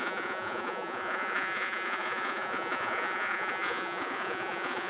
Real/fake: fake